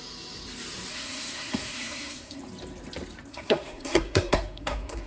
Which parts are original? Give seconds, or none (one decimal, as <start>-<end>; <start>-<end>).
0.0-0.9; 2.4-3.3